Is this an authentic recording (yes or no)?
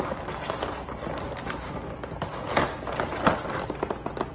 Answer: yes